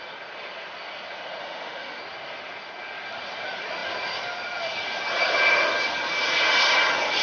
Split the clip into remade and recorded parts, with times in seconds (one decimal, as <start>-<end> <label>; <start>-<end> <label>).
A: 0.0-1.4 recorded; 1.4-2.0 remade; 2.0-7.2 recorded